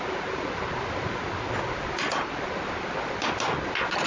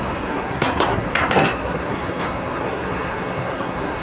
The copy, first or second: second